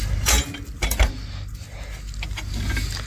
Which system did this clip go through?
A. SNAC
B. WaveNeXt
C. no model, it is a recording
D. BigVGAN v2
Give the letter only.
C